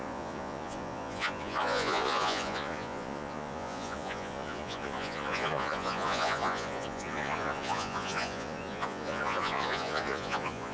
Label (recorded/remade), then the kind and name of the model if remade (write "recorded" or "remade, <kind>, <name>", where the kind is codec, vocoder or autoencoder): remade, vocoder, Vocos